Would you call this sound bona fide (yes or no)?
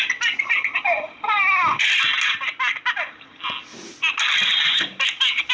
yes